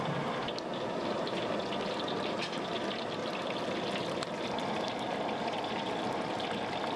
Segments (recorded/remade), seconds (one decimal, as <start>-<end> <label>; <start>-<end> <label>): 0.0-3.2 recorded; 3.2-7.0 remade